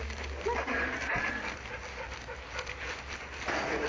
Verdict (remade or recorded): recorded